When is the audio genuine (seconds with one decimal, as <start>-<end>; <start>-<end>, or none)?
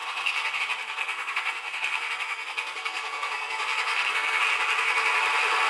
0.6-1.0; 4.4-5.7